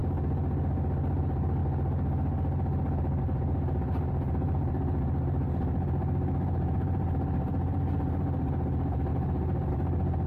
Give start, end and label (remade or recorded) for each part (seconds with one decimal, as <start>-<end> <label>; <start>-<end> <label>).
0.0-1.2 recorded; 1.2-1.6 remade; 1.6-3.2 recorded; 3.2-10.3 remade